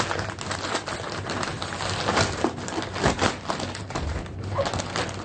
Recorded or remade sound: recorded